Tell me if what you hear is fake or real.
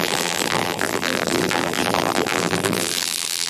fake